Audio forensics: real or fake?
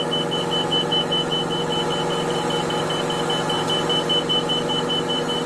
real